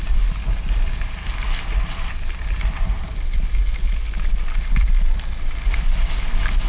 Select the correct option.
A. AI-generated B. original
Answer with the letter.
B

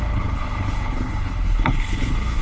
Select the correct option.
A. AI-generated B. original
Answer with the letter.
A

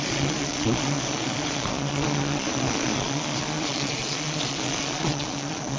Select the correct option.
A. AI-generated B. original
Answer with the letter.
A